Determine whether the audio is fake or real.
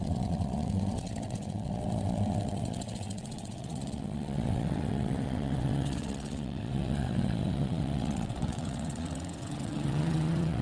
fake